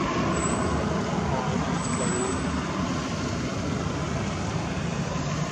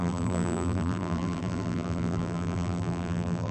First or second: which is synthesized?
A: second